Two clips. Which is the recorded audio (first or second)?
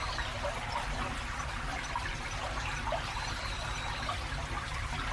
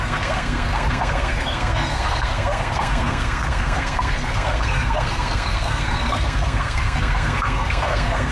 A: first